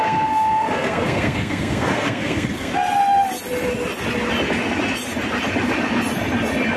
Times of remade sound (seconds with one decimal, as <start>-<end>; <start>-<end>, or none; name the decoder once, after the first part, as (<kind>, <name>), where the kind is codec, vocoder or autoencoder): 0.0-2.7 (codec, SNAC)